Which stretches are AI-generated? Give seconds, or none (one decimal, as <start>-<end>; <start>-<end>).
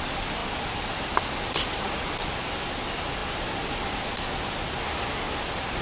none